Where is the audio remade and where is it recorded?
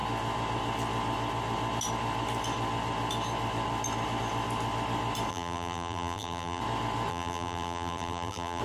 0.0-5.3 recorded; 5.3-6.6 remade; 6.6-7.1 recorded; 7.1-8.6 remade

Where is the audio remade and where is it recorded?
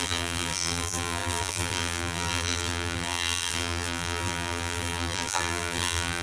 0.0-6.2 remade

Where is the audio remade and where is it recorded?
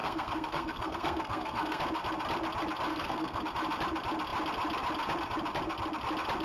0.0-1.8 remade; 1.8-2.9 recorded; 2.9-3.4 remade; 3.4-6.4 recorded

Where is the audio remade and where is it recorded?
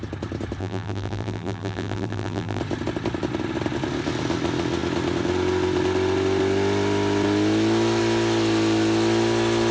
0.0-0.6 recorded; 0.6-2.6 remade; 2.6-9.7 recorded